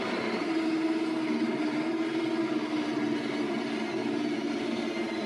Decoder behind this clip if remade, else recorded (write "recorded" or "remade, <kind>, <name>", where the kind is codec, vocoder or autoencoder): recorded